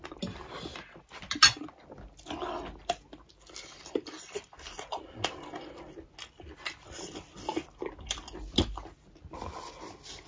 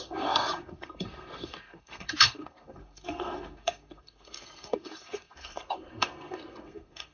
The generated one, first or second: second